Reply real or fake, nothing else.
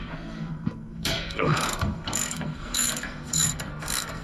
fake